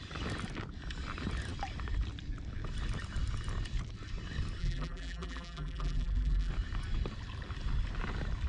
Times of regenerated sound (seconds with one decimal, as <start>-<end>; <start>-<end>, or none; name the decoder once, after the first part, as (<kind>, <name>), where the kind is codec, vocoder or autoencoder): 4.6-6.5 (vocoder, BigVGAN v2)